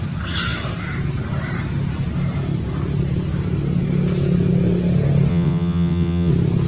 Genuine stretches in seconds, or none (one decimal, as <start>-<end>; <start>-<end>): 0.0-5.3; 6.3-6.7